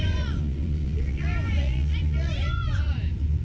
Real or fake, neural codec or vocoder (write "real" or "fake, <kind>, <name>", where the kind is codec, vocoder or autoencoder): fake, vocoder, Vocos